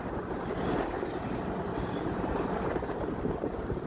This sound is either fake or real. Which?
fake